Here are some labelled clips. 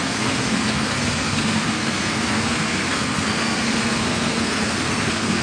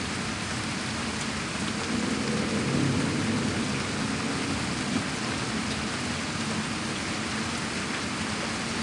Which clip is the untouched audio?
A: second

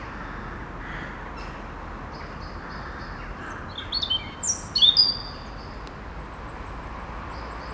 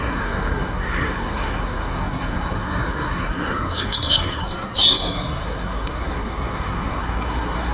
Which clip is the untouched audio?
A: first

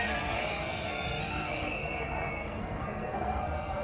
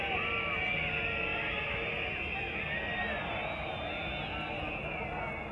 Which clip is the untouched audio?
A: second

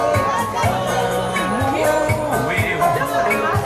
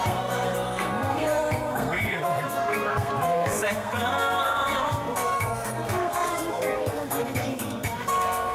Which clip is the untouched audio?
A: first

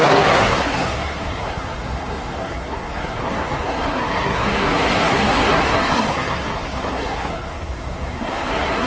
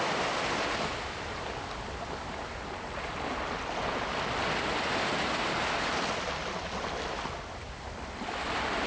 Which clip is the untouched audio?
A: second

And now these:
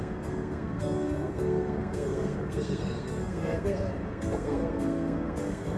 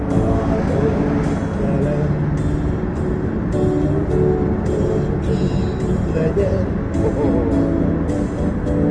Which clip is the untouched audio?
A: second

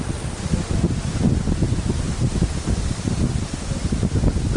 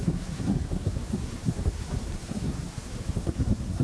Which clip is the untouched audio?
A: first